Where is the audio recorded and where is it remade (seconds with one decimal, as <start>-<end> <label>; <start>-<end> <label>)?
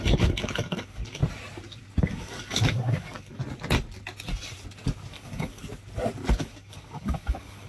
0.0-1.2 remade; 1.2-2.0 recorded; 2.0-3.4 remade; 3.4-5.1 recorded; 5.1-5.6 remade; 5.6-6.3 recorded; 6.3-7.7 remade